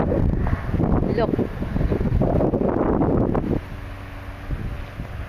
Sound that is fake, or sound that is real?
real